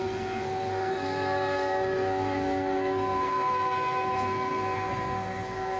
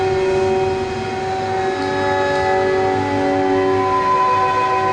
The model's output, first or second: first